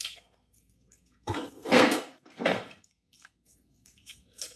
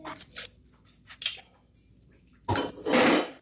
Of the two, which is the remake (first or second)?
first